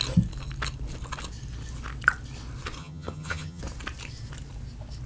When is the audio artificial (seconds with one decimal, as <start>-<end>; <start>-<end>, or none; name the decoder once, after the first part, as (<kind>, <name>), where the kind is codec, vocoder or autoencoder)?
2.8-3.6 (vocoder, HiFi-GAN)